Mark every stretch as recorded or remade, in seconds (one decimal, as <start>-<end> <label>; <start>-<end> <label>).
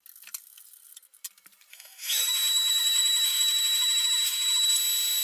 0.0-1.7 recorded; 1.7-4.7 remade; 4.7-5.2 recorded